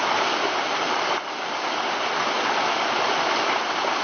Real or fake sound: real